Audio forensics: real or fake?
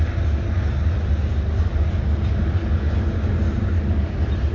real